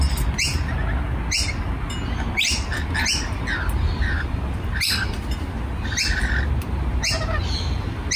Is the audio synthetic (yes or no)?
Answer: no